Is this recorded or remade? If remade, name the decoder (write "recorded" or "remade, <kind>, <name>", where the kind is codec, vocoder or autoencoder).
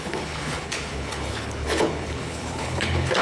remade, codec, HILCodec